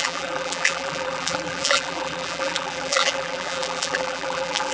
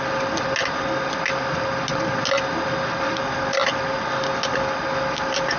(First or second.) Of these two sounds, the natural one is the second